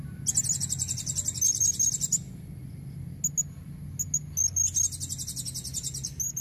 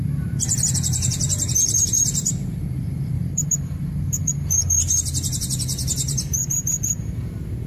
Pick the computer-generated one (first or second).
second